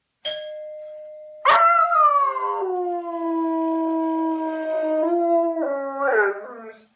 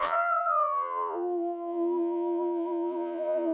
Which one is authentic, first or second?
first